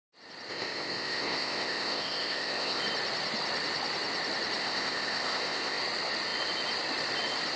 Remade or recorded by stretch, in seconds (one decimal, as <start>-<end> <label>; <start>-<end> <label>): 0.0-0.5 recorded; 0.5-2.8 remade; 2.8-4.6 recorded; 4.6-5.8 remade; 5.8-7.6 recorded